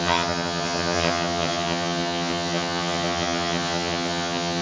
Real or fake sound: fake